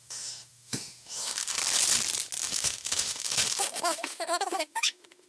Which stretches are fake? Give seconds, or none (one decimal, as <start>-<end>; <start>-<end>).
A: 0.0-1.6; 2.4-5.3